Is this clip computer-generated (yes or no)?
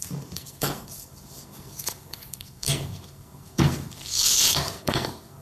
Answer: yes